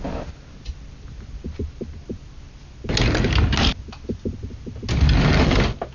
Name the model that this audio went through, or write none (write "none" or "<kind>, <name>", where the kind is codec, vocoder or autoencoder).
none